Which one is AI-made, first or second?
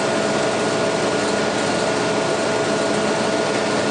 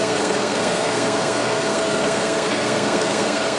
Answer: second